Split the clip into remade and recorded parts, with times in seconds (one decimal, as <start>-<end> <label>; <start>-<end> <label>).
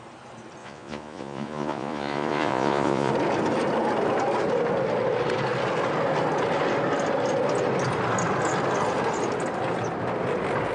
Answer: 0.0-0.6 recorded; 0.6-3.1 remade; 3.1-10.7 recorded